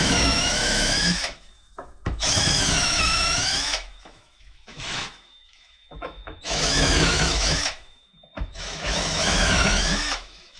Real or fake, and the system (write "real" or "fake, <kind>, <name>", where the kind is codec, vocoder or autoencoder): fake, autoencoder, DAC-VAE